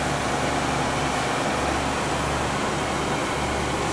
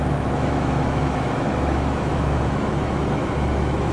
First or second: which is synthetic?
second